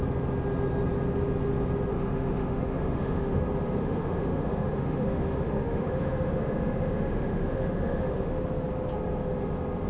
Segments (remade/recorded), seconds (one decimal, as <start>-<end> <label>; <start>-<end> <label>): 0.0-1.9 recorded; 1.9-3.4 remade; 3.4-3.8 recorded; 3.8-8.3 remade; 8.3-9.9 recorded